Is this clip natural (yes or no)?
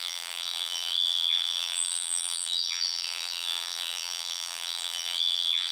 no